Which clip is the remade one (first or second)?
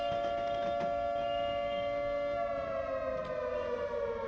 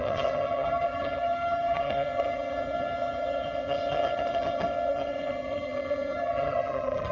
second